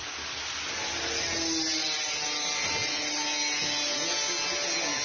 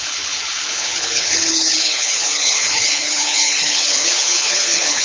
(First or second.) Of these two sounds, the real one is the first